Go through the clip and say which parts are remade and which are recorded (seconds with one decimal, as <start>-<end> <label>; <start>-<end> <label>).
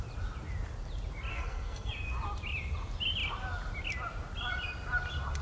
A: 0.0-1.3 recorded; 1.3-1.9 remade; 1.9-5.4 recorded